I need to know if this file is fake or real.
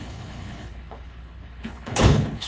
fake